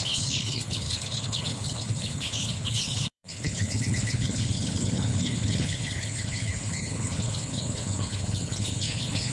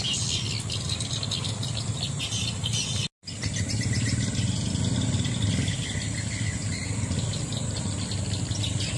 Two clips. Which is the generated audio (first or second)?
first